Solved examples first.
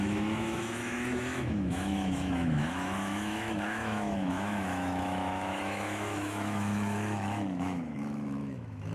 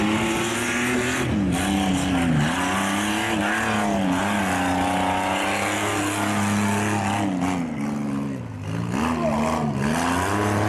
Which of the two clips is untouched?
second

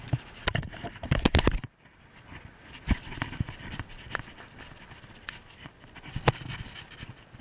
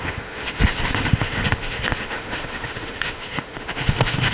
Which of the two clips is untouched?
first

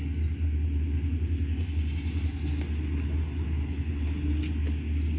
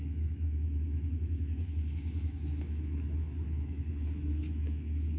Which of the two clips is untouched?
first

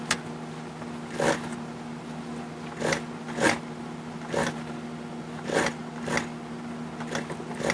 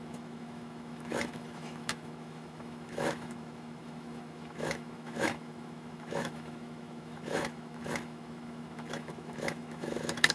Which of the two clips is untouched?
first